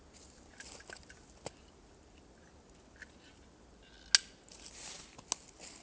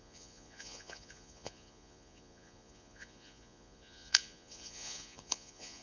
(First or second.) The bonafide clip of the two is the first